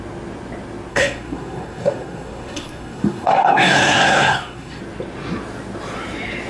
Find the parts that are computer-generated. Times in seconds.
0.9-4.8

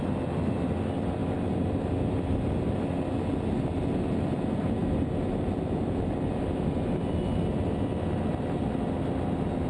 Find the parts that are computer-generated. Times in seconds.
none

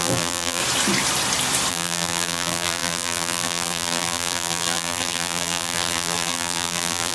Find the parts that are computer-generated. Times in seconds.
0.0-0.6; 1.7-7.1

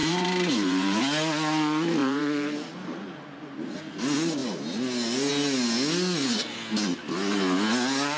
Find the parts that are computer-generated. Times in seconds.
0.0-1.0; 2.0-3.8

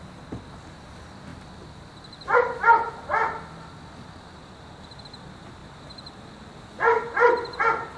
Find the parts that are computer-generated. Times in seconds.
none

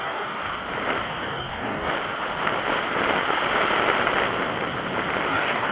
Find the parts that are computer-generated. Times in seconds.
0.0-0.4; 1.0-1.9; 5.3-5.7

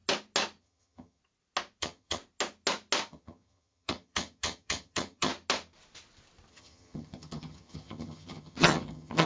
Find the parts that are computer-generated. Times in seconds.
0.6-1.2; 1.8-2.2; 3.1-5.3; 6.5-9.3